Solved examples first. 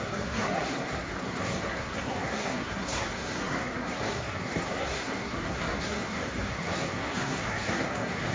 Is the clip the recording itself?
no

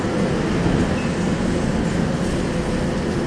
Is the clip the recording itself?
yes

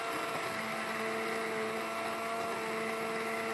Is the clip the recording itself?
yes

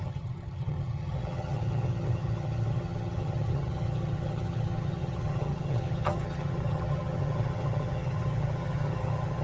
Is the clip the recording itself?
no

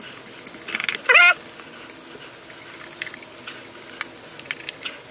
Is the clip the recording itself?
yes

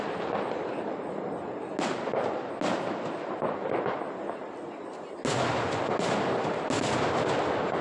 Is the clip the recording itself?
yes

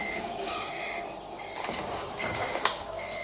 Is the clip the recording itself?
no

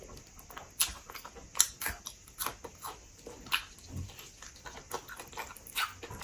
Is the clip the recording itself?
yes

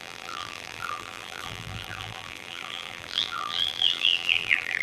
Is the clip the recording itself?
no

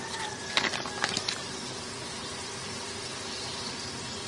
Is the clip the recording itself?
yes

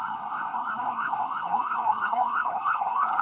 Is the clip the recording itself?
no